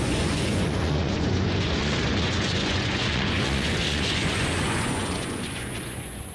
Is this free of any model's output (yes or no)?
no